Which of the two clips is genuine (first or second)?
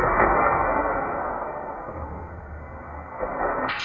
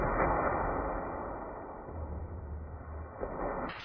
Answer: second